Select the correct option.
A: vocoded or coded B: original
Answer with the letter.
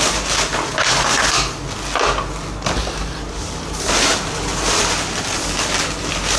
B